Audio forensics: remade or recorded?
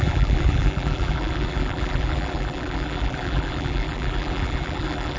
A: remade